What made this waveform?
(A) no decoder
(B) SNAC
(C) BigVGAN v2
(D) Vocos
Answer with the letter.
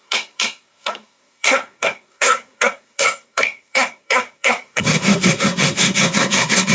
B